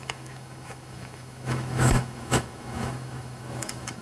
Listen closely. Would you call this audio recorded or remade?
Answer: remade